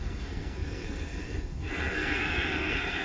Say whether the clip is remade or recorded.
remade